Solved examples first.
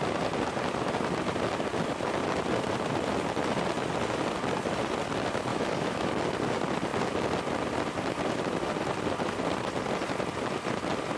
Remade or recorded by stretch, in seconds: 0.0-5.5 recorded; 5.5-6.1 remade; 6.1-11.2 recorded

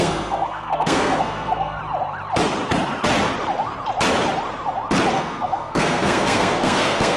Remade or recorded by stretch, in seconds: 0.0-1.8 remade; 1.8-5.1 recorded; 5.1-7.2 remade

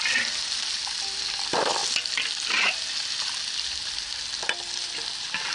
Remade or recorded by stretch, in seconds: 0.0-5.5 recorded

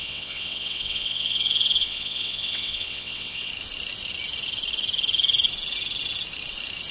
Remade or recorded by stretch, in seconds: 0.0-3.5 remade; 3.5-6.9 recorded

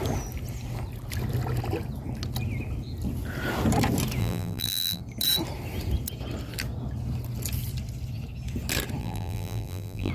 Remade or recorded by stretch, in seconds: 0.0-4.2 recorded; 4.2-5.0 remade; 5.0-9.0 recorded; 9.0-10.1 remade

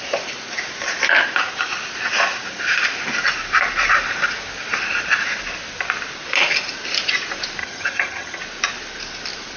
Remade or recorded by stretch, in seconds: 0.0-7.6 recorded; 7.6-8.4 remade; 8.4-9.6 recorded

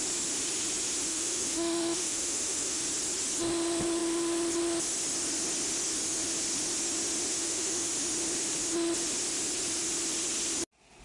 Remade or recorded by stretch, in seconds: 0.0-1.1 recorded; 1.1-2.8 remade; 2.8-7.3 recorded; 7.3-7.9 remade; 7.9-11.0 recorded